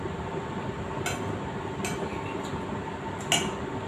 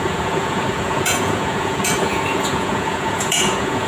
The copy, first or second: second